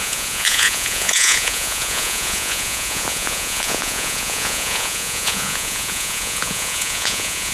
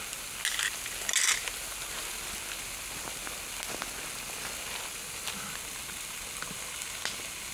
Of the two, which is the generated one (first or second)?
first